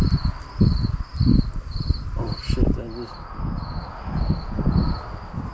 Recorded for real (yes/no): yes